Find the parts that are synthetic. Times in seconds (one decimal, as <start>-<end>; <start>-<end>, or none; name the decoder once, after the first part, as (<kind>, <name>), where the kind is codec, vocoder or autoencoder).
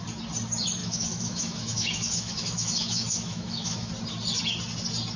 0.8-3.9 (autoencoder, DAC-VAE)